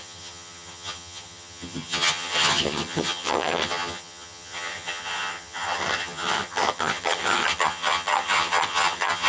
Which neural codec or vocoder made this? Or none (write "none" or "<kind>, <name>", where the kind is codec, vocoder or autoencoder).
vocoder, HiFi-GAN